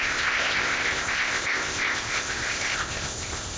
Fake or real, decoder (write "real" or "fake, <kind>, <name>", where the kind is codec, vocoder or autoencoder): fake, codec, ZipCodec